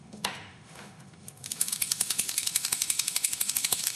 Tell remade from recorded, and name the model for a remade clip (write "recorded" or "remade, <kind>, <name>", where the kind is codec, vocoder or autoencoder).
remade, autoencoder, DAC-VAE